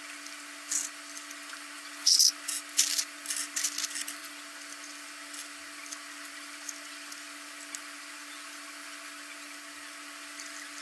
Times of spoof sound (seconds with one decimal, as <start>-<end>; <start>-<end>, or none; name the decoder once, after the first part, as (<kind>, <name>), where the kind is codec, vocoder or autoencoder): none